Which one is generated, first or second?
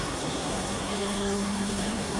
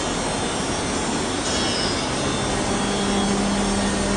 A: first